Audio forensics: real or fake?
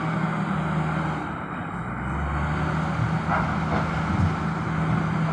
real